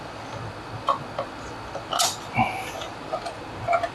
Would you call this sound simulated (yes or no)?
no